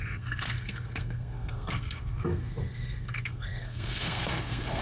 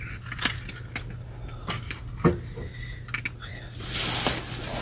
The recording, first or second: second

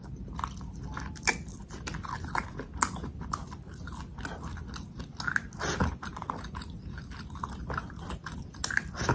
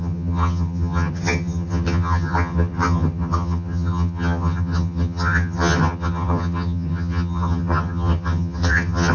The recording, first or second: first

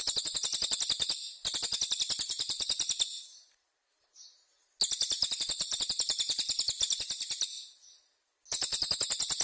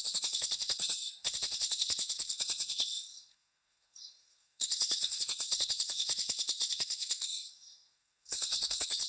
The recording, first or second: first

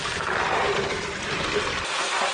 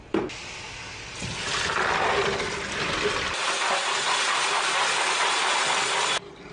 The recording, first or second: second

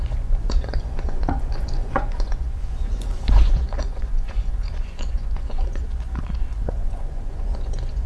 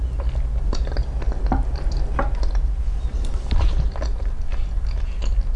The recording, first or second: second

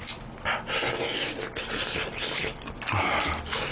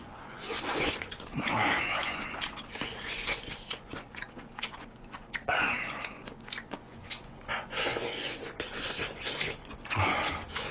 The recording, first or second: first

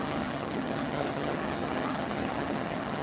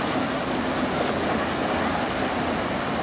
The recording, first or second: second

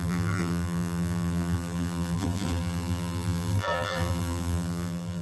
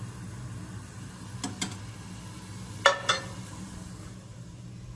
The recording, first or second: second